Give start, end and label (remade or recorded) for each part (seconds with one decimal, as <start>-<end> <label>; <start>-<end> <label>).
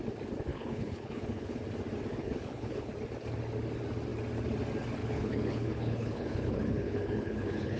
0.0-0.5 recorded; 0.5-1.6 remade; 1.6-2.1 recorded; 2.1-2.9 remade; 2.9-5.0 recorded; 5.0-7.8 remade